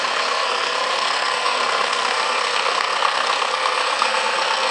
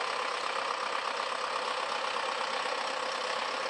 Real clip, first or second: second